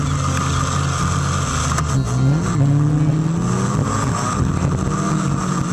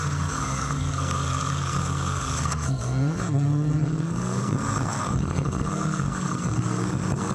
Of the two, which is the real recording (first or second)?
first